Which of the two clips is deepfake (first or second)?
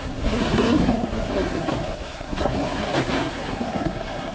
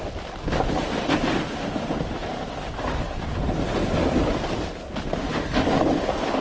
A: first